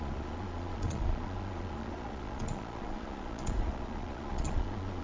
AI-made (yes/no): yes